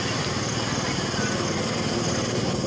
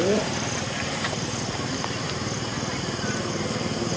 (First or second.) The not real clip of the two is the second